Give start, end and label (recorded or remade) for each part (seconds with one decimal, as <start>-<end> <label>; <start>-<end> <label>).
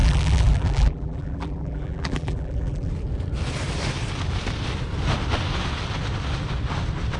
0.0-2.9 remade; 2.9-7.2 recorded